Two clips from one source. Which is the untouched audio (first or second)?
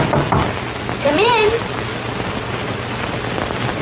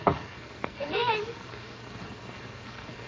first